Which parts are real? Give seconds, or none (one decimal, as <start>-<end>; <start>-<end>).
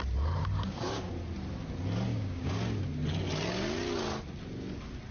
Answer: 0.0-0.4; 1.1-2.1; 2.6-5.1